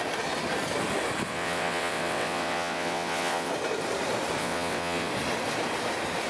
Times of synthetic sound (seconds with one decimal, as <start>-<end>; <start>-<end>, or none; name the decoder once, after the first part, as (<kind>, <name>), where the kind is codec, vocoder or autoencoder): 1.3-3.5 (vocoder, WaveNeXt); 4.4-5.1